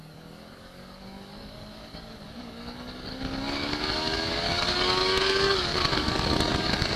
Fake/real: fake